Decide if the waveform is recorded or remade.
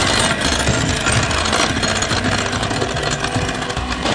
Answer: recorded